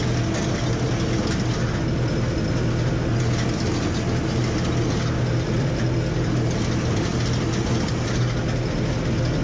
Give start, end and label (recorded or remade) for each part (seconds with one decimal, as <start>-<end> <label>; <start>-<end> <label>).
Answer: 0.0-9.4 recorded